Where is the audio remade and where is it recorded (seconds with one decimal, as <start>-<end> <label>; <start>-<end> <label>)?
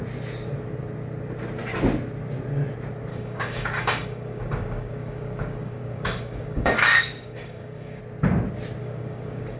0.0-3.1 recorded; 3.1-8.0 remade; 8.0-8.8 recorded; 8.8-9.6 remade